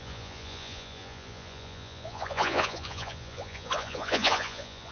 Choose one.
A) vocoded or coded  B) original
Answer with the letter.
A